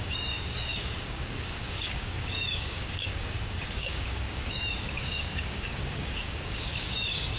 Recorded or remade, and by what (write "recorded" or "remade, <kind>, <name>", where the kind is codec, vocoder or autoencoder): remade, codec, DAC